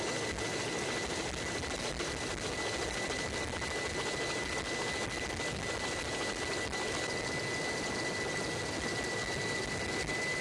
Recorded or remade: recorded